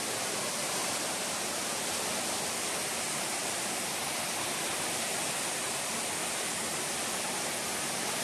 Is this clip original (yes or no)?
yes